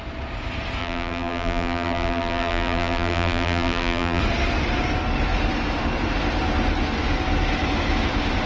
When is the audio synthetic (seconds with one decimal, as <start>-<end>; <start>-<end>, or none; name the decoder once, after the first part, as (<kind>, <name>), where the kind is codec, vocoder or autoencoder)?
0.8-4.2 (vocoder, BigVGAN v2)